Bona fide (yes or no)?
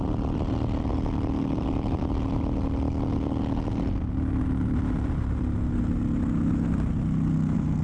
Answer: yes